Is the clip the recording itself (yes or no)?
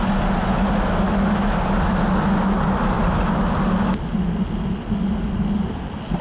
yes